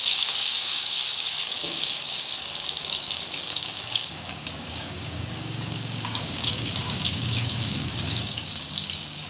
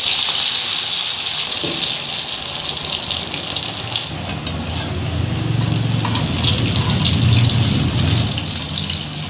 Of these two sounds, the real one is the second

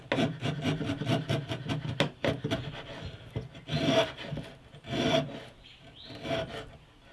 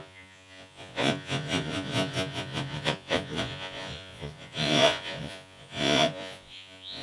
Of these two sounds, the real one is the first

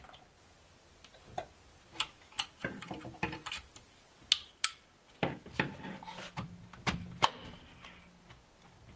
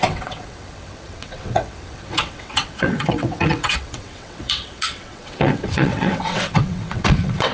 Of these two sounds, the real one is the first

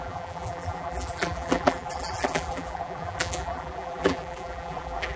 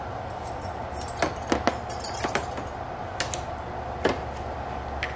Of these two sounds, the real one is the second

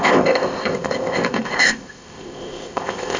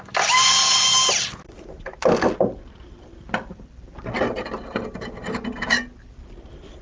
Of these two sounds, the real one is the second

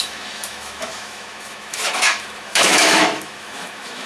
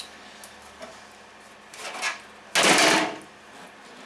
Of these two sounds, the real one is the second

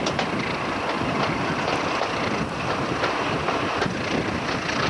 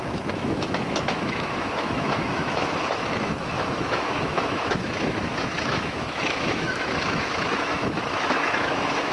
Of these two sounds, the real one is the first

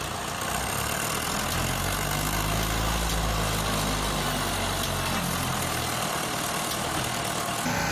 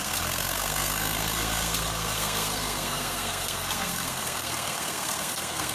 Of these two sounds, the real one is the first